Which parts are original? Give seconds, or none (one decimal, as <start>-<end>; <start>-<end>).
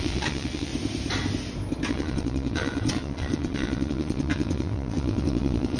0.7-1.9